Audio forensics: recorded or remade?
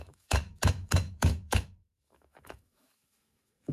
remade